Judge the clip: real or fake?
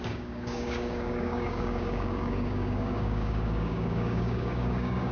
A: fake